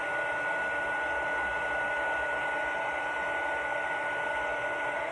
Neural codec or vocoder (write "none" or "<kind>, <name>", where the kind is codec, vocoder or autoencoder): none